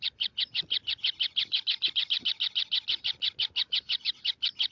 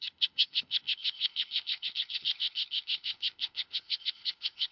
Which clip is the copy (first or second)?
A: second